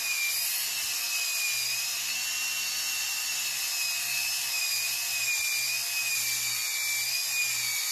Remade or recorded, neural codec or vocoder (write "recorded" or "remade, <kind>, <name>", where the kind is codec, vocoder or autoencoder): recorded